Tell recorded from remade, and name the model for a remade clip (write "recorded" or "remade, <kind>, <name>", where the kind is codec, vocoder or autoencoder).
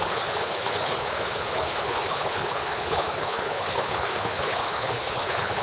remade, codec, HILCodec